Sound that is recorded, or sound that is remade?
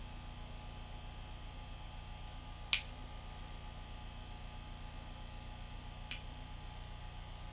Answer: recorded